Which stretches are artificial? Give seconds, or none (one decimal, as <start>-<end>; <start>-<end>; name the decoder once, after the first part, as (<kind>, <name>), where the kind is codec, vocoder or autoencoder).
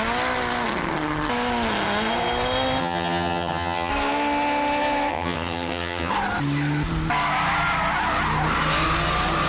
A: 2.8-3.9 (vocoder, HiFi-GAN); 5.1-6.1